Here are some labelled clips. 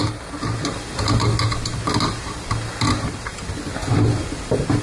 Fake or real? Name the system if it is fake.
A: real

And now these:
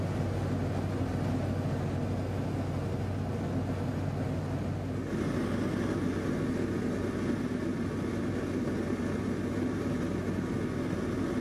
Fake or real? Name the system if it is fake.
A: real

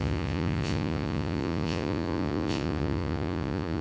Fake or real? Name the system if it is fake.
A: fake, vocoder, Vocos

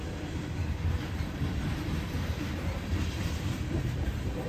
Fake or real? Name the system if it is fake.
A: fake, vocoder, BigVGAN v2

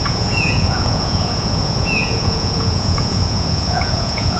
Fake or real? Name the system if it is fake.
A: fake, vocoder, Vocos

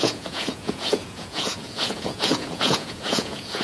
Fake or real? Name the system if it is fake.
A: fake, vocoder, Vocos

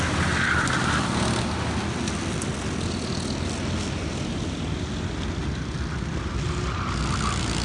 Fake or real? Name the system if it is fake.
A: real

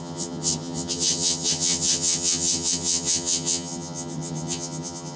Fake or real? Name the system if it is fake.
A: fake, vocoder, HiFi-GAN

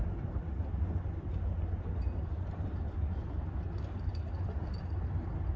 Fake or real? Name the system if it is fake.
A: real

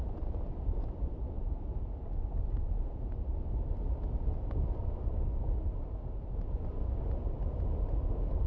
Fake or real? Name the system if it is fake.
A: real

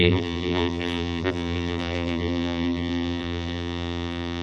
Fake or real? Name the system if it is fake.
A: fake, vocoder, BigVGAN v2